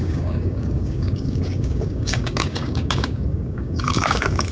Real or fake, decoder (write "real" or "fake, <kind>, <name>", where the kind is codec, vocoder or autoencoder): fake, codec, DAC